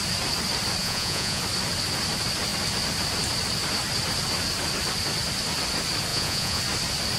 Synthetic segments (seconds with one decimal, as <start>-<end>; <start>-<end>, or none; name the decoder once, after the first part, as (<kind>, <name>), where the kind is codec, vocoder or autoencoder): 0.8-1.4 (vocoder, Vocos); 6.1-6.6